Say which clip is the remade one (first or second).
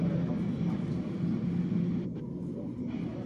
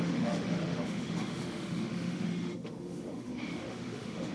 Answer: second